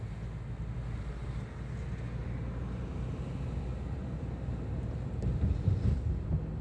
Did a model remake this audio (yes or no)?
no